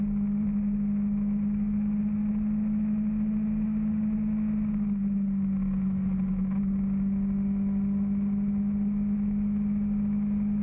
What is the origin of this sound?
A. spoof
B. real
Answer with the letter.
B